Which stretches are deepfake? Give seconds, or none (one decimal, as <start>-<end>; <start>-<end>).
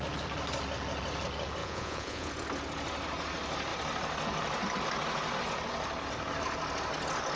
1.6-2.3